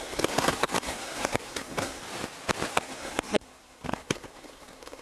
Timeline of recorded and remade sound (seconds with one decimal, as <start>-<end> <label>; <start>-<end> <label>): 0.0-2.0 remade; 2.0-2.7 recorded; 2.7-5.0 remade